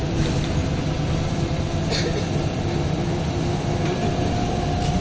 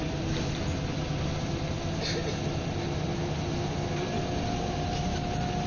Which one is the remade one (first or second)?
first